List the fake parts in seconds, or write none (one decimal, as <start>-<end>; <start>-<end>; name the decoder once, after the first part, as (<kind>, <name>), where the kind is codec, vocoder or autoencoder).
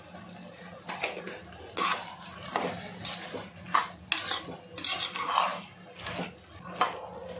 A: none